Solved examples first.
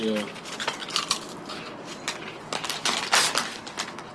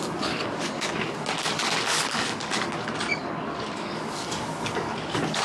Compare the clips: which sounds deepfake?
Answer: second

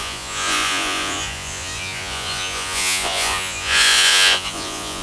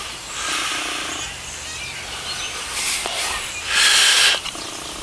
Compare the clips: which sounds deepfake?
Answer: first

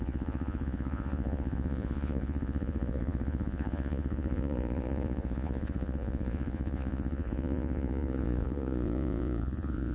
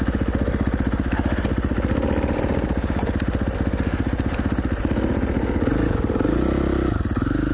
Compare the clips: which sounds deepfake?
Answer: first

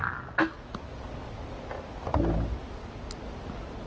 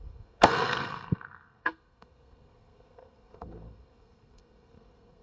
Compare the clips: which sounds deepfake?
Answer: second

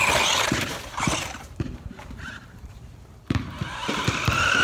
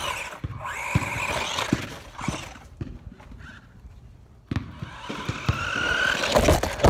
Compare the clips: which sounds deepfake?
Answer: first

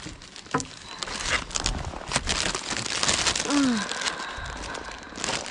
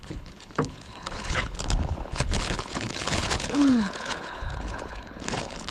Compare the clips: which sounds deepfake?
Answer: second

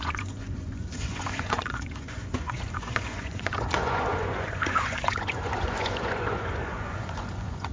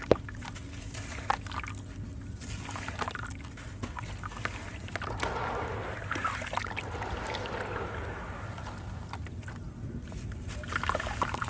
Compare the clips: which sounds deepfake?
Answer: first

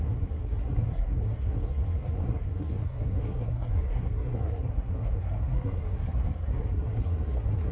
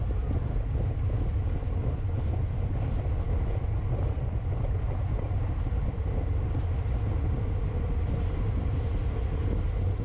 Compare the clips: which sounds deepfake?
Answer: first